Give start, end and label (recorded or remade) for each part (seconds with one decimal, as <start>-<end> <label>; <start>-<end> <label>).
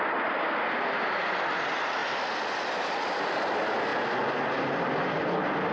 0.0-5.7 recorded